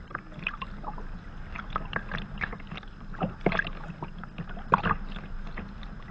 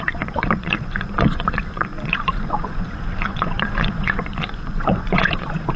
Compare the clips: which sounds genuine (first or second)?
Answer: first